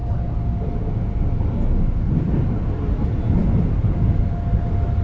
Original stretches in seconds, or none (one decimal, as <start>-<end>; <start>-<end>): 0.0-3.4; 4.2-5.0